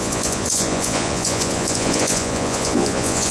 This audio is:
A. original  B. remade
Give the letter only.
B